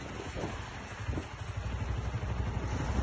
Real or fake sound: real